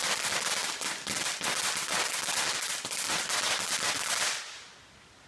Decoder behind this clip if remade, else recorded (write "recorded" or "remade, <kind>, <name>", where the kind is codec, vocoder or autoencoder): recorded